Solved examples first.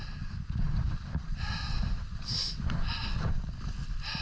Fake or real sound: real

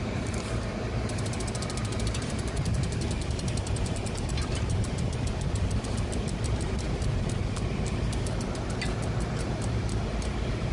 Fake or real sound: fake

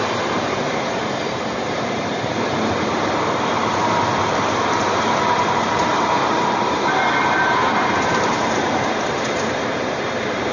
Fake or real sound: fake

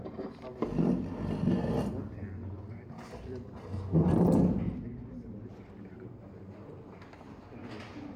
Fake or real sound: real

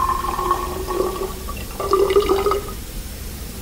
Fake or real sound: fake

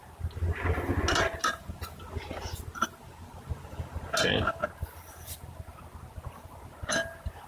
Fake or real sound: real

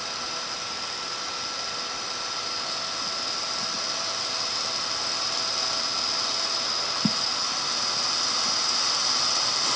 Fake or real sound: real